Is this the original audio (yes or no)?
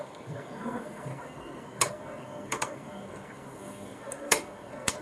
no